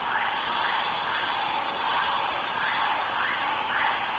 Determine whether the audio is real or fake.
real